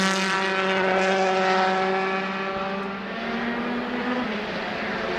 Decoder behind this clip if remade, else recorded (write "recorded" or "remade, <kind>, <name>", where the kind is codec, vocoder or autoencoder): recorded